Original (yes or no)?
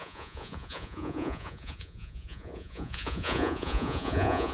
no